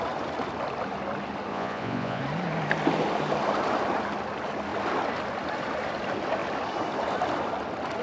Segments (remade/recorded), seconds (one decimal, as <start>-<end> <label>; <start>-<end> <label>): 0.0-1.5 recorded; 1.5-2.2 remade; 2.2-8.0 recorded